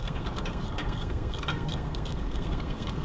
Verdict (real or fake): fake